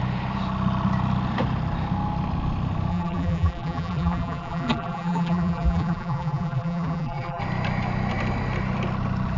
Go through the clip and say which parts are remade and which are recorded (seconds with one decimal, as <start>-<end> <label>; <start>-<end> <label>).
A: 0.0-2.9 recorded; 2.9-7.4 remade; 7.4-9.4 recorded